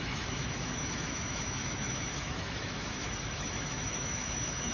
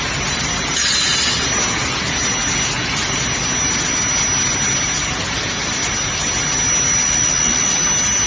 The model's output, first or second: first